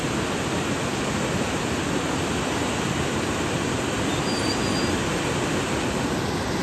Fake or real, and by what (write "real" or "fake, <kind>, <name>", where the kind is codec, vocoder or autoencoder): real